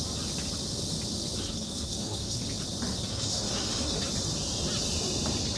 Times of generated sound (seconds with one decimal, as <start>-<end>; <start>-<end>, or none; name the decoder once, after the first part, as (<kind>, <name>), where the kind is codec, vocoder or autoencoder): 1.4-2.4 (codec, SNAC); 3.1-4.0